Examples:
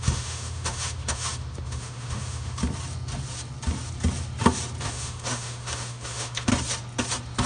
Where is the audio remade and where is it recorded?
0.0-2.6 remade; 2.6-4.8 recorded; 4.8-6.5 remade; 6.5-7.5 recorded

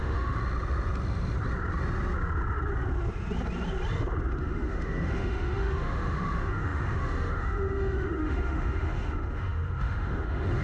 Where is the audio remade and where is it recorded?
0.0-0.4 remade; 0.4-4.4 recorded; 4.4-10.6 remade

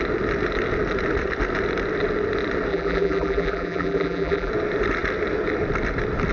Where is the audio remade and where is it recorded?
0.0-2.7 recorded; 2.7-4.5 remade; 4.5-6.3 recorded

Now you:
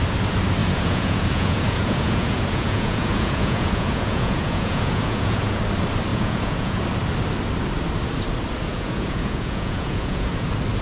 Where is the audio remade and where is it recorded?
0.0-0.6 recorded; 0.6-5.6 remade; 5.6-6.1 recorded; 6.1-6.8 remade; 6.8-8.7 recorded; 8.7-10.3 remade; 10.3-10.8 recorded